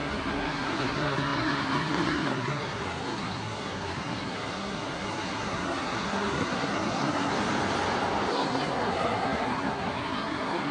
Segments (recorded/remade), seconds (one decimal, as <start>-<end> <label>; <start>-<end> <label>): 0.0-7.3 remade; 7.3-8.3 recorded; 8.3-10.7 remade